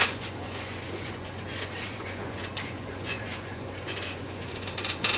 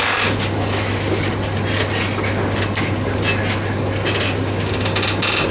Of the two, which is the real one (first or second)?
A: second